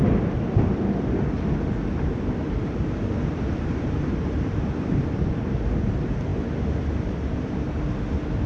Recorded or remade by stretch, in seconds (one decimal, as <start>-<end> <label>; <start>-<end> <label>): 0.0-2.4 recorded; 2.4-5.4 remade; 5.4-8.5 recorded